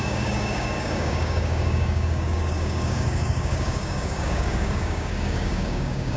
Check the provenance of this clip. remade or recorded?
remade